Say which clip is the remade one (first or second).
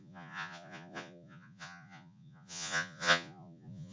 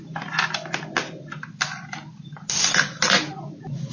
first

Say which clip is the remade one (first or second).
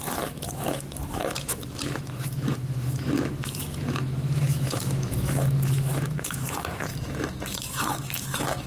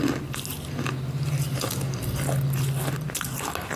first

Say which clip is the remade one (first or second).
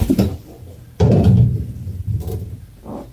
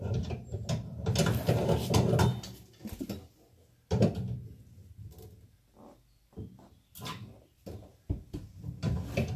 first